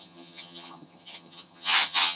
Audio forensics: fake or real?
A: fake